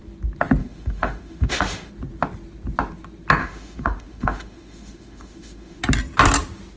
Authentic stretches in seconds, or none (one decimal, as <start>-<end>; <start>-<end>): 0.0-0.6; 1.9-3.4; 5.8-6.8